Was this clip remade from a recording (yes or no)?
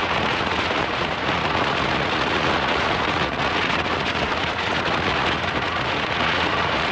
yes